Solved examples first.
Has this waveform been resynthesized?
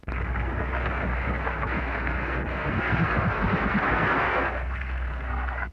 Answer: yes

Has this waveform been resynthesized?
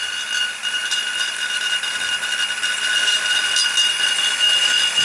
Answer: no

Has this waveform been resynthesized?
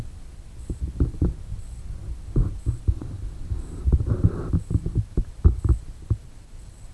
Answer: no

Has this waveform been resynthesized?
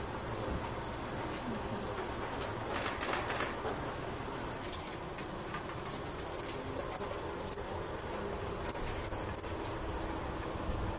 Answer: no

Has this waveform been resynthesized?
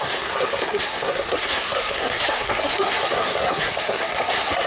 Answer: yes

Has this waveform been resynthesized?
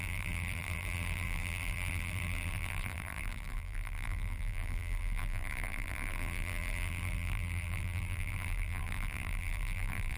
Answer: yes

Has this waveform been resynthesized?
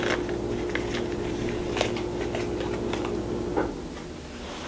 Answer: no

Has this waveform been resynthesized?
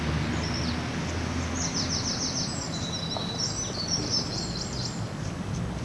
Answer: no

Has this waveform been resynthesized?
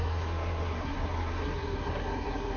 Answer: yes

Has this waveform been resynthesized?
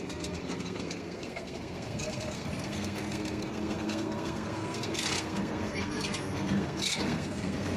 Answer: yes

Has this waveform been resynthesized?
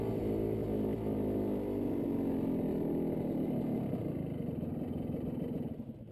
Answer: no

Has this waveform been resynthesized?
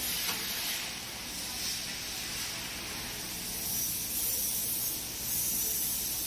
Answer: no